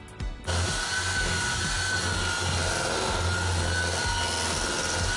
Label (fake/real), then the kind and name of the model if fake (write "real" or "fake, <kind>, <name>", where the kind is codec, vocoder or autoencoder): real